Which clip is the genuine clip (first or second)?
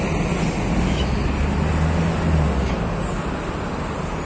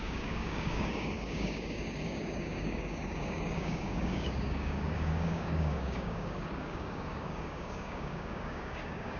first